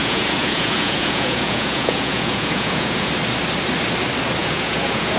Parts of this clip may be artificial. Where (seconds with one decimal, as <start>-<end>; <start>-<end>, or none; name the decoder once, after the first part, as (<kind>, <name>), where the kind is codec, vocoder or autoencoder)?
0.0-3.1 (vocoder, Vocos); 4.4-5.2